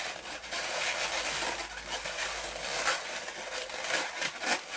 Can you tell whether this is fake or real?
real